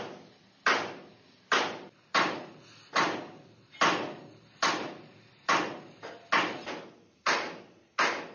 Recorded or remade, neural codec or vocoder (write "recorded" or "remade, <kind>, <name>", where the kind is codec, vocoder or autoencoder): recorded